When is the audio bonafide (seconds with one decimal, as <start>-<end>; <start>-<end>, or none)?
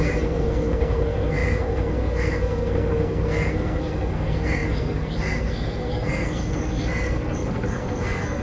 none